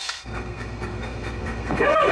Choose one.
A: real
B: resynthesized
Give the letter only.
B